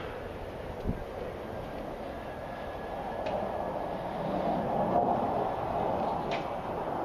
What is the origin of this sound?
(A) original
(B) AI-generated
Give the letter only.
A